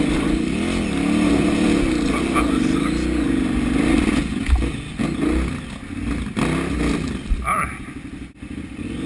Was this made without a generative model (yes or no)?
yes